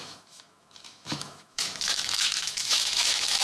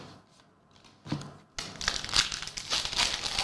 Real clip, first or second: second